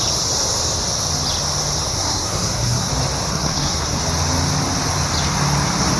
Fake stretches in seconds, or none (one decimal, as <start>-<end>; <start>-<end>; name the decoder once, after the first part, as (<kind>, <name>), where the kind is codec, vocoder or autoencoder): 1.9-2.9 (codec, SNAC); 3.3-4.0